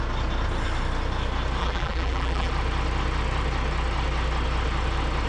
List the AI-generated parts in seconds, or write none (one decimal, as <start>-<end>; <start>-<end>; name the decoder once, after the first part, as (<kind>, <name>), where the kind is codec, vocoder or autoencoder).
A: 1.6-2.5 (vocoder, BigVGAN v2)